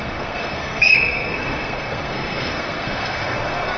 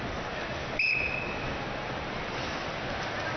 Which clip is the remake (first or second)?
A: first